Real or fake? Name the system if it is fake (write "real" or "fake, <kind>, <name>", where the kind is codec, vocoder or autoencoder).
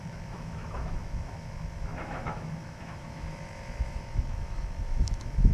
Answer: fake, autoencoder, DAC-VAE